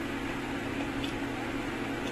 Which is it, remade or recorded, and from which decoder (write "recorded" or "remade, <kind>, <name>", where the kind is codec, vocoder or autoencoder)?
recorded